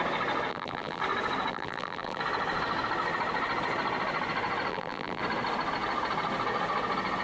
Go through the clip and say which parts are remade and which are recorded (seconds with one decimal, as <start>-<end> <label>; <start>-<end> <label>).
0.0-0.5 recorded; 0.5-1.0 remade; 1.0-1.5 recorded; 1.5-2.2 remade; 2.2-4.7 recorded; 4.7-5.2 remade; 5.2-7.2 recorded